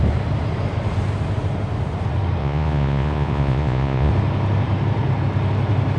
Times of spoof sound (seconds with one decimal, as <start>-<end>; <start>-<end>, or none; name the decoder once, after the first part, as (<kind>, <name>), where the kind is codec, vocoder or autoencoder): 2.4-4.1 (vocoder, Vocos)